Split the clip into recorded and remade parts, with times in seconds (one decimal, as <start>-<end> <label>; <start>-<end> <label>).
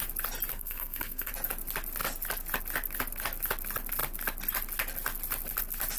0.0-0.5 recorded; 0.5-1.3 remade; 1.3-6.0 recorded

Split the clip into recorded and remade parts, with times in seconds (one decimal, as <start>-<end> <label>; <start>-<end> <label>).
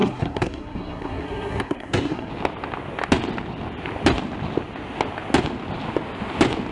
0.0-2.3 remade; 2.3-6.7 recorded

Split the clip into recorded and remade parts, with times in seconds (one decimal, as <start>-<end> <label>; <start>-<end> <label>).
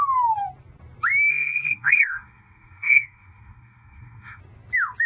0.0-1.3 recorded; 1.3-4.4 remade; 4.4-5.1 recorded